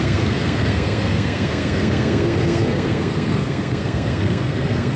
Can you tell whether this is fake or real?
fake